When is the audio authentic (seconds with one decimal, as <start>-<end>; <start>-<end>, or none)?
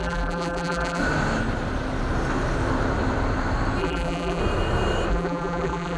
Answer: 1.0-3.8; 4.4-5.1